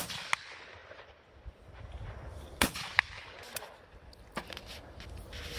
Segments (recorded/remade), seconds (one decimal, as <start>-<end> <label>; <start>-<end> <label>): 0.0-0.8 recorded; 0.8-4.2 remade; 4.2-5.6 recorded